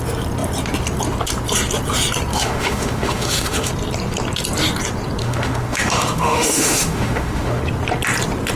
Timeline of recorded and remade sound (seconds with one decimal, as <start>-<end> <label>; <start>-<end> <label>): 0.0-2.3 recorded; 2.3-3.7 remade; 3.7-5.2 recorded; 5.2-7.6 remade; 7.6-8.6 recorded